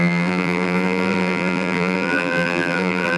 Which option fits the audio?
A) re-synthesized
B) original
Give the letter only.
A